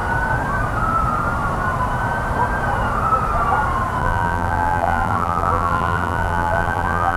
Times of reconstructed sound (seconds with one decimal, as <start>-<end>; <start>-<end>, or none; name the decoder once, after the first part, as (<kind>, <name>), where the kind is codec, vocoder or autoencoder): 4.0-7.2 (vocoder, BigVGAN v2)